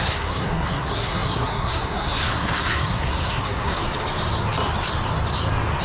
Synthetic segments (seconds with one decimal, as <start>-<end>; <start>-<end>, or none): 0.0-3.8